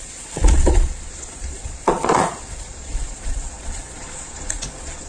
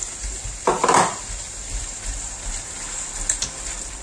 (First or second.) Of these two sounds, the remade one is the first